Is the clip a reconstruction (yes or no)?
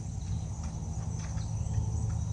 no